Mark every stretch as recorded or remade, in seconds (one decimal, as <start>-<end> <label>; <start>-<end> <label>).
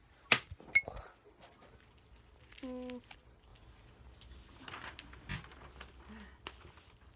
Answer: 0.0-7.2 recorded